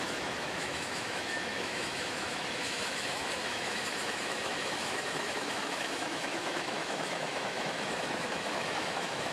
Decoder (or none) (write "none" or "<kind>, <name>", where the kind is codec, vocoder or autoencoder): autoencoder, DAC-VAE